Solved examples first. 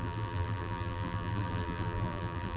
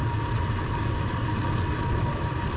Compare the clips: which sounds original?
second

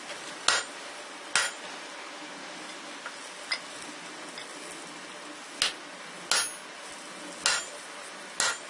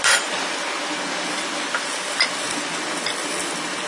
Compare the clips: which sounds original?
first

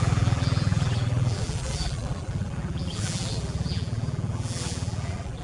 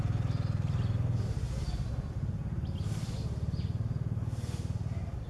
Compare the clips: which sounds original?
second